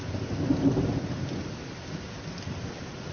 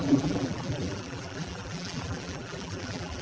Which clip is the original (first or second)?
first